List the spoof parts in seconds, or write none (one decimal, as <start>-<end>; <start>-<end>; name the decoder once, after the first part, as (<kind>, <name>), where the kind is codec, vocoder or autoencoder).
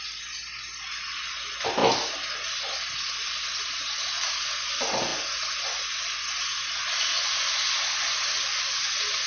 none